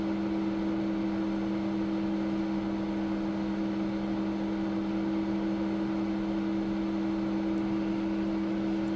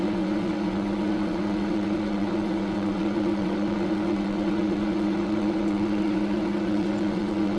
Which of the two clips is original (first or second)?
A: first